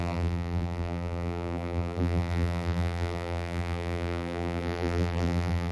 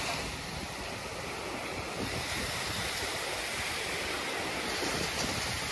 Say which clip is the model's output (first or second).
first